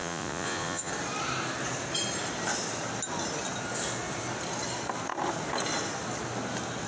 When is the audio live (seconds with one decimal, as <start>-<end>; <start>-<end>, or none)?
0.9-6.9